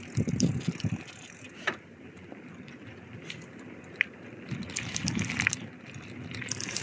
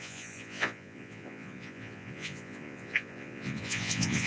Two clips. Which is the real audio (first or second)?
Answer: first